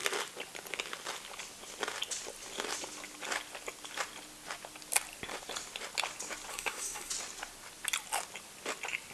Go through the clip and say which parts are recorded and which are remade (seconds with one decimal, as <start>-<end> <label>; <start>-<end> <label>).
0.0-6.5 recorded; 6.5-7.1 remade; 7.1-9.1 recorded